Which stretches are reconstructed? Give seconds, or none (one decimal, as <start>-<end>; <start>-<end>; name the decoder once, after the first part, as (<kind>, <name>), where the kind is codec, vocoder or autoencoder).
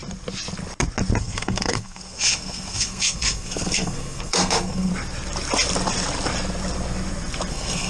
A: 1.2-4.9 (codec, SNAC); 7.5-7.9